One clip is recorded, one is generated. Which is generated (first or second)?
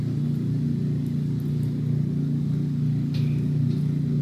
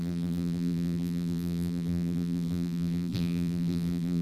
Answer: second